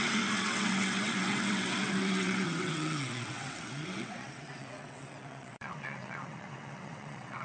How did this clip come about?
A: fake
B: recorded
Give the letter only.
A